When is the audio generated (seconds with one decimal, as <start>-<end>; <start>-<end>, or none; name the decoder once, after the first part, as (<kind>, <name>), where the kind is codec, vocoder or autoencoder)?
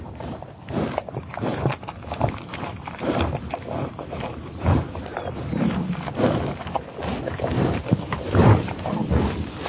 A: 0.0-5.1 (vocoder, BigVGAN v2); 7.2-9.0